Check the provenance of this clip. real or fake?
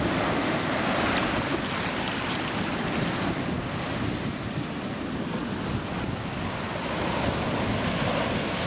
real